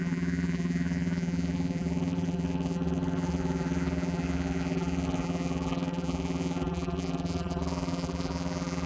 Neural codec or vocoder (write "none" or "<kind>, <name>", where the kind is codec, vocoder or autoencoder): vocoder, BigVGAN v2